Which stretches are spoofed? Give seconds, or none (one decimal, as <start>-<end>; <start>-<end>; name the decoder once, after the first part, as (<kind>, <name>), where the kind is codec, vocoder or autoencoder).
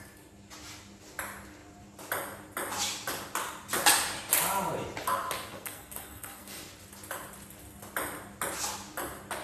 5.5-6.7 (codec, SNAC)